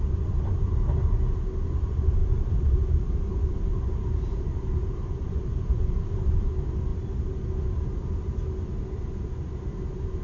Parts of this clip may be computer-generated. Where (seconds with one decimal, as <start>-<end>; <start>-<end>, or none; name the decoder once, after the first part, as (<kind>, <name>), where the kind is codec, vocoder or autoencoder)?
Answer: 2.2-6.3 (vocoder, BigVGAN v2)